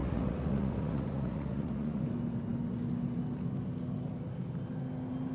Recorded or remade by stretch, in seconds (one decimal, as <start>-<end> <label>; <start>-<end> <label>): 0.0-2.0 remade; 2.0-5.3 recorded